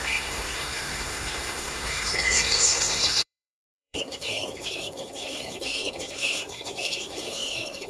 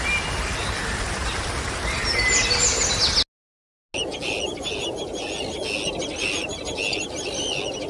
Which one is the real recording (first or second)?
second